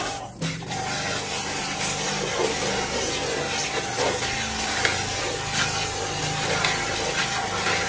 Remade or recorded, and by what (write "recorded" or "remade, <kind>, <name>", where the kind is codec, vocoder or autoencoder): recorded